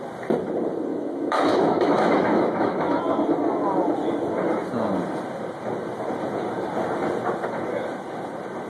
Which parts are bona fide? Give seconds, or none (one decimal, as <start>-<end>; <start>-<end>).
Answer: 0.0-0.9; 3.0-8.7